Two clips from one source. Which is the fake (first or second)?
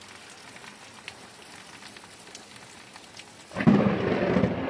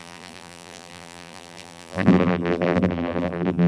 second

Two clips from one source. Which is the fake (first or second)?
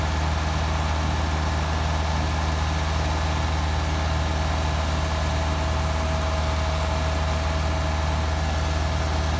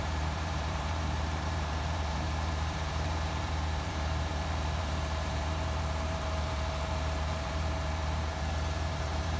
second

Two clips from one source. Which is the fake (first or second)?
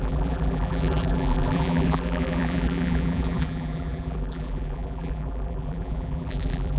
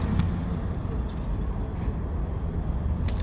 first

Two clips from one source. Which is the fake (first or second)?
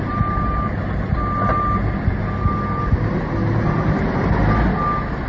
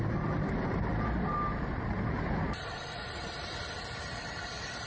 second